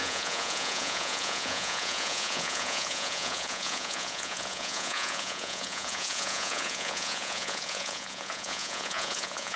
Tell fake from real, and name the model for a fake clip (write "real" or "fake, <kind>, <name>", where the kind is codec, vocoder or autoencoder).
fake, vocoder, Vocos